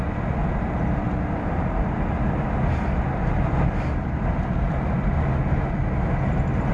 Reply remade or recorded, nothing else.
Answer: recorded